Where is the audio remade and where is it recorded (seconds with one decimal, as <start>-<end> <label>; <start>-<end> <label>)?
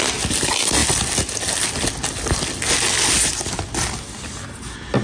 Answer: 0.0-5.0 recorded